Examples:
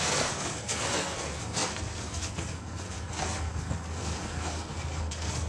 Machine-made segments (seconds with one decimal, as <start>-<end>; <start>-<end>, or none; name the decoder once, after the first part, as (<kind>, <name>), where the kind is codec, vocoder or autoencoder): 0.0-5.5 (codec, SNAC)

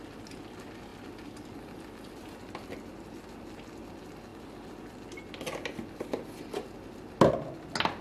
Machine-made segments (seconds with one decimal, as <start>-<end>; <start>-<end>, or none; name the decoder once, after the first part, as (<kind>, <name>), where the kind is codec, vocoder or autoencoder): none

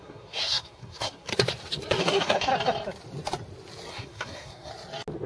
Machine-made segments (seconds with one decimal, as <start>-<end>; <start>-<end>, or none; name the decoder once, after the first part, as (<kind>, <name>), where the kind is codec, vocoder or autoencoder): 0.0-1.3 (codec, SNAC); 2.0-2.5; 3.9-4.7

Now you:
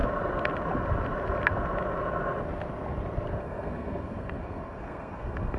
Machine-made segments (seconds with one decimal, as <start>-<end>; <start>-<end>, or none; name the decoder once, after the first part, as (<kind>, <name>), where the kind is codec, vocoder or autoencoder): 3.4-5.6 (codec, SNAC)

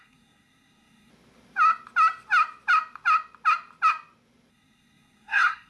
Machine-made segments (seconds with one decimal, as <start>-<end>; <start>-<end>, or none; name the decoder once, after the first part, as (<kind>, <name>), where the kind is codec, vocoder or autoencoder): 0.0-1.1 (codec, SNAC); 4.5-5.7

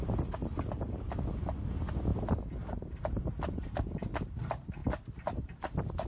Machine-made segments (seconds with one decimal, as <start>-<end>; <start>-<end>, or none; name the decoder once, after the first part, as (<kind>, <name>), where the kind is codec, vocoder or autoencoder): none

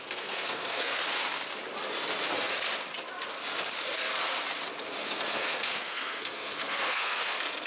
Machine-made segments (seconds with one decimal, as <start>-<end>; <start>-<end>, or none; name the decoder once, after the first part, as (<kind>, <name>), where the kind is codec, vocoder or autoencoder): 0.0-1.0 (codec, SNAC); 5.0-7.7